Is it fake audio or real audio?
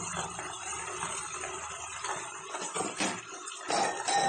real